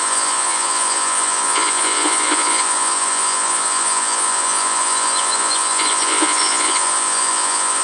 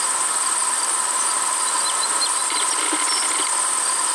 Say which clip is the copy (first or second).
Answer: first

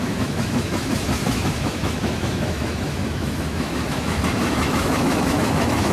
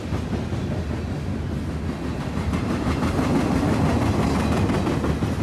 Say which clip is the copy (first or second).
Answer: first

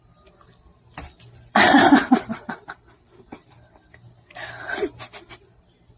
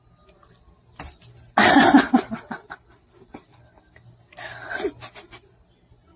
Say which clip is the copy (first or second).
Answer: first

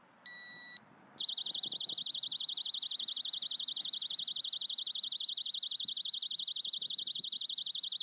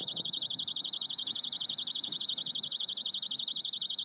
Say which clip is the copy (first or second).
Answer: second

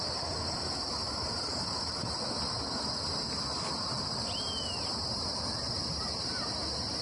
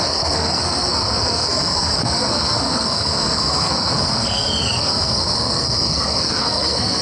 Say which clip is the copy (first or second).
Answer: second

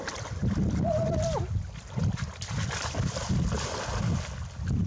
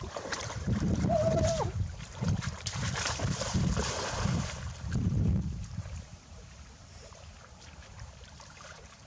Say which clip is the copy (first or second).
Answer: second